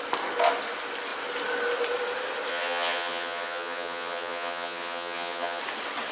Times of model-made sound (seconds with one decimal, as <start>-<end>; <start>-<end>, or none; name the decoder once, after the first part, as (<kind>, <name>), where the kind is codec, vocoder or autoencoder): 2.5-5.6 (vocoder, HiFi-GAN)